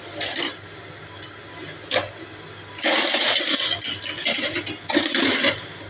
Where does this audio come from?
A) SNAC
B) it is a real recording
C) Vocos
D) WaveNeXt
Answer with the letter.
B